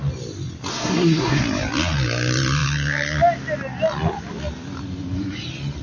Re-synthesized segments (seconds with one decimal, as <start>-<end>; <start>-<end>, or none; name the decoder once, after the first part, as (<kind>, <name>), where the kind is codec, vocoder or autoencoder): 0.7-1.4 (codec, SNAC)